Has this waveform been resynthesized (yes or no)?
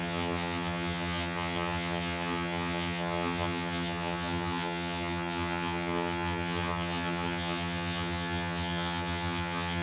yes